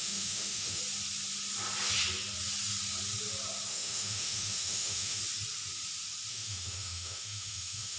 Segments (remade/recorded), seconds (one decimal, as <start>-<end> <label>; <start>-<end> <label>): 0.0-0.8 remade; 0.8-3.7 recorded; 3.7-5.2 remade; 5.2-6.3 recorded; 6.3-8.0 remade